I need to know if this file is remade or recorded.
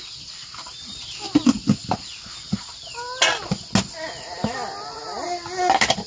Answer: recorded